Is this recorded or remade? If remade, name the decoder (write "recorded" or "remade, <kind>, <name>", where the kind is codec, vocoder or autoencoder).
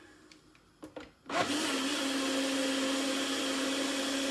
recorded